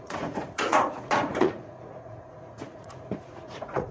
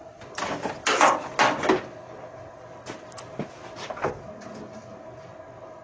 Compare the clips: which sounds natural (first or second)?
second